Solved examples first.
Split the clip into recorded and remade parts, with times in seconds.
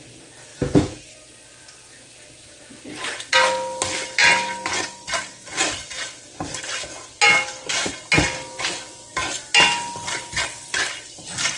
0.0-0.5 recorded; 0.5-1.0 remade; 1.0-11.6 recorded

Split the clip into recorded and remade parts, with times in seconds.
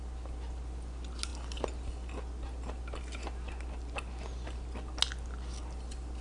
0.0-6.2 recorded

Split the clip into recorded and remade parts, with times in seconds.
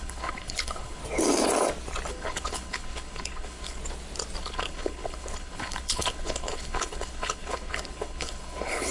0.0-1.0 remade; 1.0-2.1 recorded; 2.1-3.8 remade; 3.8-4.4 recorded; 4.4-8.9 remade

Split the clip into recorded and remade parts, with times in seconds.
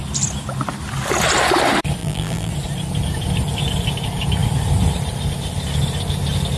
0.0-2.0 recorded; 2.0-2.5 remade; 2.5-6.6 recorded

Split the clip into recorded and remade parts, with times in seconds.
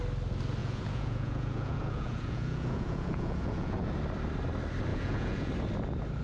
0.0-0.6 recorded; 0.6-3.9 remade; 3.9-4.9 recorded; 4.9-5.5 remade; 5.5-6.2 recorded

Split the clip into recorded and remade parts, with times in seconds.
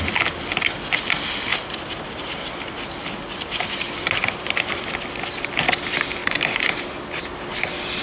0.0-1.5 recorded; 1.5-4.9 remade; 4.9-6.2 recorded; 6.2-7.6 remade; 7.6-8.0 recorded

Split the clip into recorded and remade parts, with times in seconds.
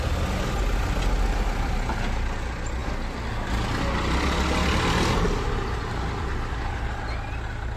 0.0-7.8 recorded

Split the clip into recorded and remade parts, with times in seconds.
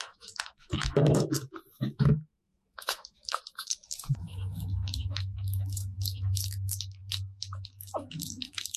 0.0-8.8 remade